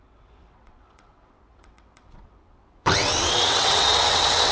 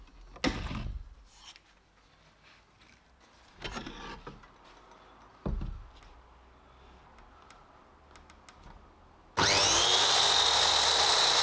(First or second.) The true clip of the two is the second